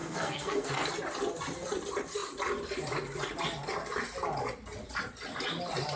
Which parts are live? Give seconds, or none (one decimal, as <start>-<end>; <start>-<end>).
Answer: 0.7-6.0